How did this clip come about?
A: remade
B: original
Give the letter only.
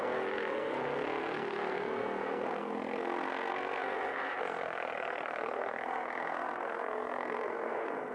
A